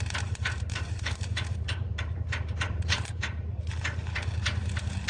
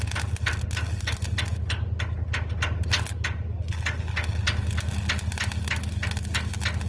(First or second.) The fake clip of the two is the first